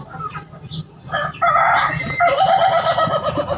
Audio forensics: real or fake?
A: real